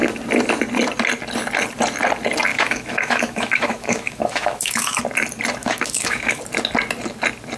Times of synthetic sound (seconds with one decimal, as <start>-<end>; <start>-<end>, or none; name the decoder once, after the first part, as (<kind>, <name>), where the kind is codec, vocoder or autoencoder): 2.5-5.0 (autoencoder, DAC-VAE); 5.6-6.4

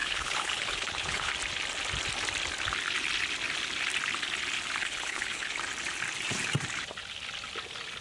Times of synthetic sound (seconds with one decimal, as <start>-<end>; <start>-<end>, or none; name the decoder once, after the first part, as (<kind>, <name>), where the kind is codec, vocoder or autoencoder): 0.0-1.3 (codec, HILCodec); 4.8-5.5

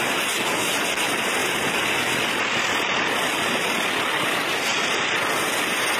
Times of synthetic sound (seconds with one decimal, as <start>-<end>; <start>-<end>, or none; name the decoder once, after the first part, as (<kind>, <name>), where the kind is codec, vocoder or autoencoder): none

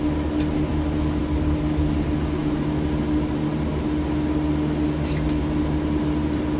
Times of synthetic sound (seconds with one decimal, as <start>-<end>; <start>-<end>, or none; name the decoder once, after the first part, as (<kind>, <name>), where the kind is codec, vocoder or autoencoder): none

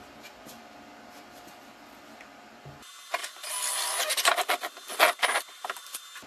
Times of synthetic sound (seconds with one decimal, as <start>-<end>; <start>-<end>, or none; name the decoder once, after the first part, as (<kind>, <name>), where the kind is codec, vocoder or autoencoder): none

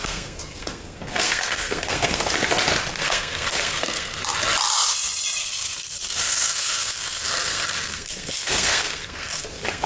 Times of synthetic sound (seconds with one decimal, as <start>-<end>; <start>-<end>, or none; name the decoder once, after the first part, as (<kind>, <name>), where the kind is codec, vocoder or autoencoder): 0.0-2.3 (codec, SNAC); 2.9-4.2; 5.4-9.9

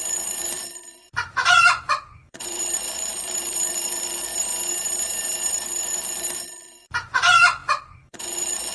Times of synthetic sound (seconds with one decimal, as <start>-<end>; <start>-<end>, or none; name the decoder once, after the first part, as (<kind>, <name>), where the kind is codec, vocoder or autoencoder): 0.0-4.3 (vocoder, Vocos); 5.5-8.7